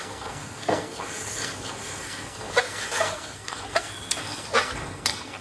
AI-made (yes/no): yes